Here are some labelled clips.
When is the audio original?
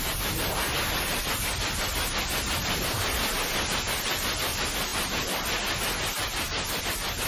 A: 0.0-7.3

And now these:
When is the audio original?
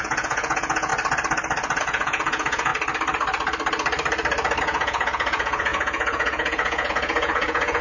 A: 0.9-1.8; 2.7-4.6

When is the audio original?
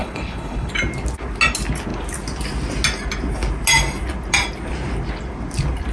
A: 0.7-5.9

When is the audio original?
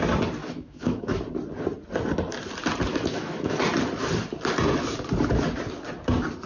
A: 0.0-0.4; 1.2-2.9; 3.6-6.5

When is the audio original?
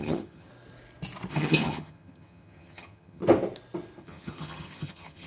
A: 0.5-1.3; 3.2-4.0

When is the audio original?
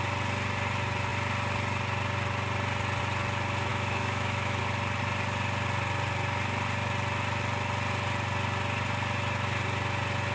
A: 0.0-3.7; 4.6-10.3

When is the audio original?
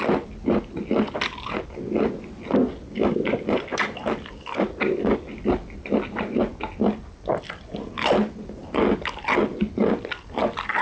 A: 0.0-10.8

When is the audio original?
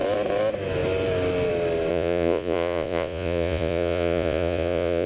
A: 0.0-1.9